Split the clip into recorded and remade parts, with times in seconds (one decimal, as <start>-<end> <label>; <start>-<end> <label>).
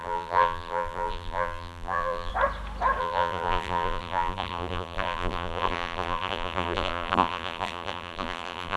0.0-2.3 remade; 2.3-3.0 recorded; 3.0-8.8 remade